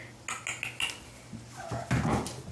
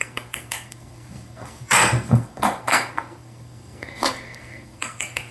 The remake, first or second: second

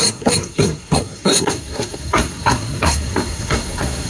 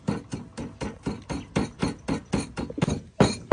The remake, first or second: first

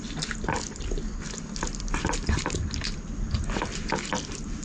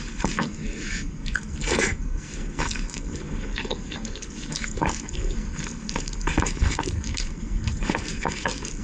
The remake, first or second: second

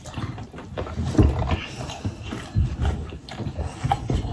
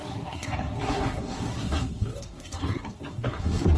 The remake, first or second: second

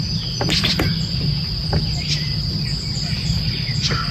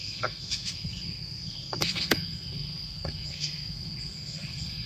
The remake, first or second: second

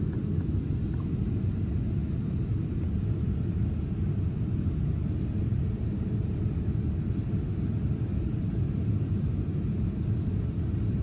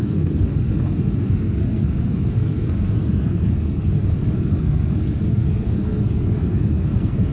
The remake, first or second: second